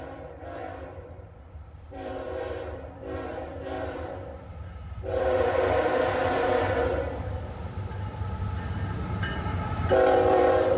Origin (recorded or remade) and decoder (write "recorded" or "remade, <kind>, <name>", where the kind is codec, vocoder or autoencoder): remade, vocoder, BigVGAN v2